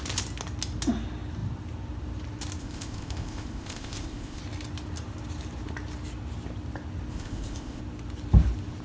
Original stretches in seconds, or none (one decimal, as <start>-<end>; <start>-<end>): 0.0-2.6; 4.4-7.1; 7.8-8.8